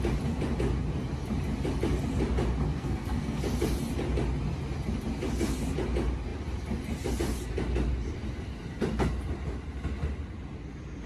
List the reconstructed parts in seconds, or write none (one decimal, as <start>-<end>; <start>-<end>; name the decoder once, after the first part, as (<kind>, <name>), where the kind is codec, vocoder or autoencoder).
2.7-3.4 (codec, SNAC)